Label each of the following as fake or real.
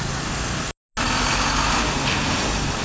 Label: real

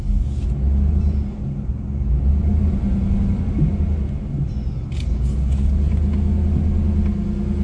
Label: real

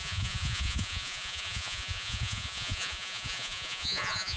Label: fake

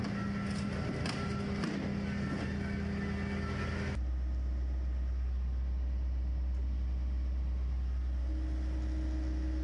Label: real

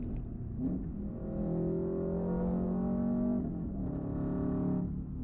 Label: real